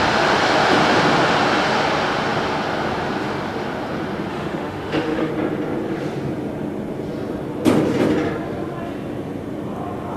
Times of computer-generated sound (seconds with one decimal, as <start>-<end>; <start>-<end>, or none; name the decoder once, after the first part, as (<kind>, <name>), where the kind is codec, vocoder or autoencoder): 4.3-5.3 (autoencoder, DAC-VAE)